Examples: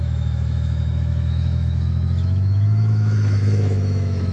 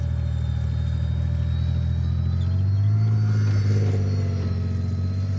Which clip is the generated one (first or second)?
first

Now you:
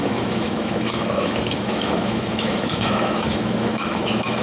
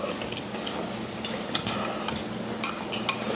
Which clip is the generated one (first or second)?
first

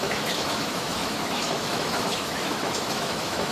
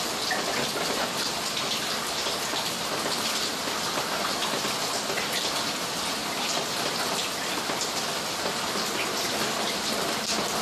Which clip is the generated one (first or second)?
first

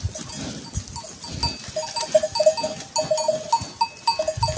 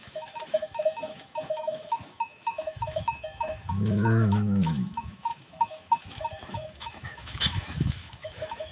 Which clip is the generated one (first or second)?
second